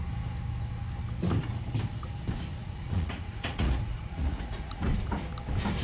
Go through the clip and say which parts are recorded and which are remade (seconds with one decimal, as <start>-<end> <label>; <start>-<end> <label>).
0.0-2.6 recorded; 2.6-4.9 remade; 4.9-5.8 recorded